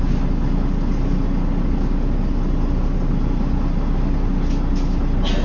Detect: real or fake real